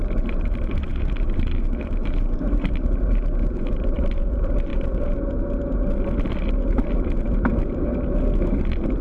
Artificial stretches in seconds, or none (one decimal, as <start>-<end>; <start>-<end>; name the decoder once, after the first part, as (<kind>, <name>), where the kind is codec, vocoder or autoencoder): 0.0-4.7 (vocoder, BigVGAN v2); 8.4-9.0